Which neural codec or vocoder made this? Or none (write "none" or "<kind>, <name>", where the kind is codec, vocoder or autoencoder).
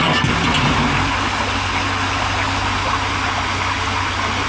none